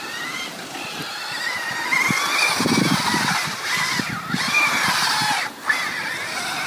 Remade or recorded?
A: recorded